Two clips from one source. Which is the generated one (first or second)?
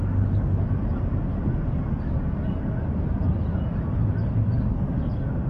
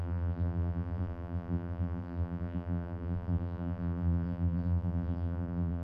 second